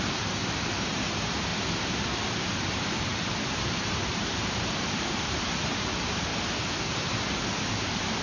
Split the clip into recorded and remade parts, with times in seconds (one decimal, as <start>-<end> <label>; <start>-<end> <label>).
0.0-1.5 remade; 1.5-2.5 recorded; 2.5-6.3 remade; 6.3-7.7 recorded; 7.7-8.2 remade